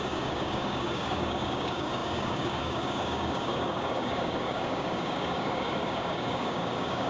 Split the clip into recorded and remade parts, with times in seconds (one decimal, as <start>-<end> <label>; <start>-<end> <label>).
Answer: 0.0-7.1 remade